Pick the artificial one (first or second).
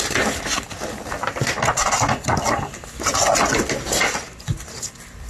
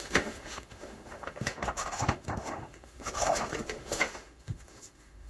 second